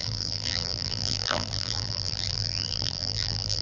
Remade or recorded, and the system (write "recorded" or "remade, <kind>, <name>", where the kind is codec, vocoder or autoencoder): remade, vocoder, BigVGAN v2